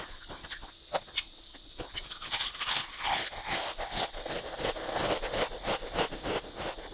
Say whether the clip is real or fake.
real